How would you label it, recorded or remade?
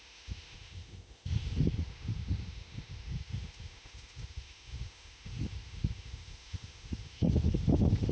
remade